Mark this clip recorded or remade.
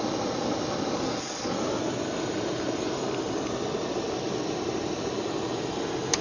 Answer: recorded